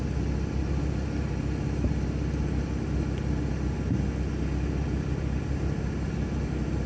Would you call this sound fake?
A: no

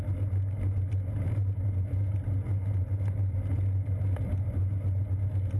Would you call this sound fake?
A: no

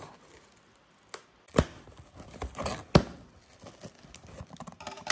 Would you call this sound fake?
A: no